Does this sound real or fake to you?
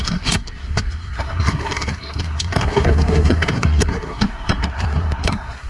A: fake